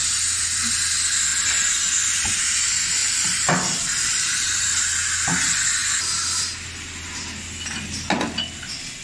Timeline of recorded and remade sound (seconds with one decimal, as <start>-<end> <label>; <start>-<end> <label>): 0.0-3.0 recorded; 3.0-4.6 remade; 4.6-5.8 recorded; 5.8-6.4 remade; 6.4-9.0 recorded